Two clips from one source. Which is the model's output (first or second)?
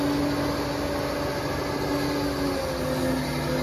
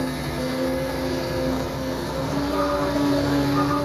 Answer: second